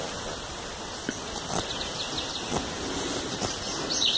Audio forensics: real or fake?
real